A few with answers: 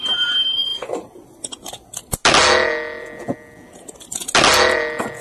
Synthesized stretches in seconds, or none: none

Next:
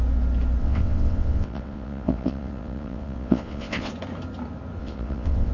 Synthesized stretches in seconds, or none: 0.6-3.9 (vocoder, WaveNeXt); 4.8-5.5

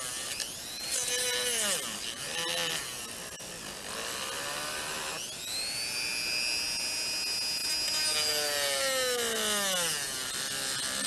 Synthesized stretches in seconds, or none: none

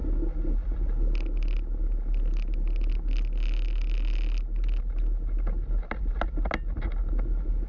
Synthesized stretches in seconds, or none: none

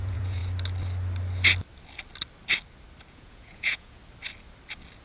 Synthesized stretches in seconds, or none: 0.0-0.4 (vocoder, Vocos); 3.1-4.0

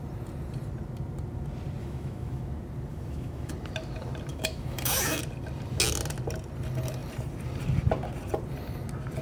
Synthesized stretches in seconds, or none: 1.8-2.4 (autoencoder, DAC-VAE); 2.9-3.5; 4.3-5.2

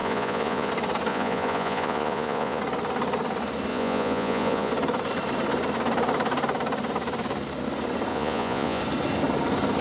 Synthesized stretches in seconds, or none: 0.0-0.7 (vocoder, Vocos); 1.1-2.6; 3.7-4.7; 8.1-8.8